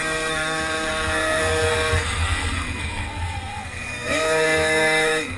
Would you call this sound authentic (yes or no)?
no